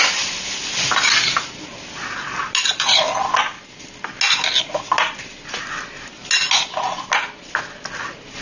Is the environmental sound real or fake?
real